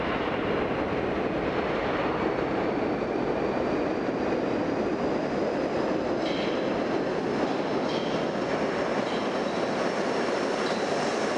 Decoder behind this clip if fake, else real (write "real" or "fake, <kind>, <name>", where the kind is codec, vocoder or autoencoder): real